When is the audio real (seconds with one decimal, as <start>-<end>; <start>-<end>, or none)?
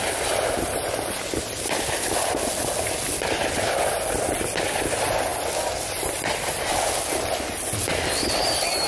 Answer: 0.0-8.9